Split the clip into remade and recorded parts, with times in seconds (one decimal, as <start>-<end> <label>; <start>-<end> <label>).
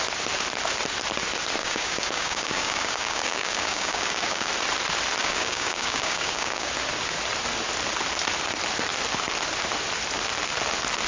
0.0-1.6 recorded; 1.6-4.5 remade; 4.5-5.2 recorded; 5.2-6.7 remade; 6.7-11.1 recorded